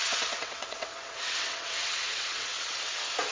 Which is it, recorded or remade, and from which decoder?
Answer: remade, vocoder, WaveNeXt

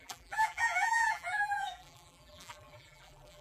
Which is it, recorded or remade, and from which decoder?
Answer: remade, vocoder, BigVGAN v2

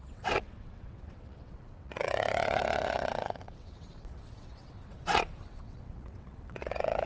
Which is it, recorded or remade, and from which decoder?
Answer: remade, vocoder, WaveNeXt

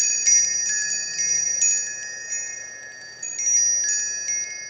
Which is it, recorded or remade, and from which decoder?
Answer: recorded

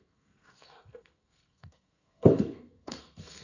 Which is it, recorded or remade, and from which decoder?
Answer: remade, codec, SNAC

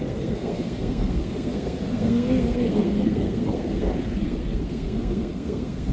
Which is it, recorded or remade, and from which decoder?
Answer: remade, codec, SNAC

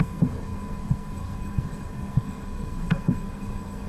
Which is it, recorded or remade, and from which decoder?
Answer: remade, codec, SNAC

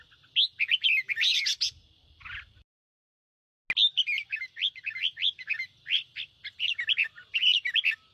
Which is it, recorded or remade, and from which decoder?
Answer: recorded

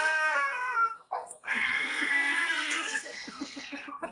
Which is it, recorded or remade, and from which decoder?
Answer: remade, codec, SNAC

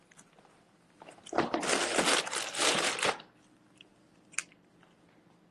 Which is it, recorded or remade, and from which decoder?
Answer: recorded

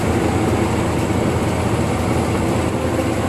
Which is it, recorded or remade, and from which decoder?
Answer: recorded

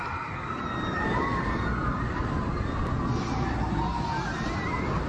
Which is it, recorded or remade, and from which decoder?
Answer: recorded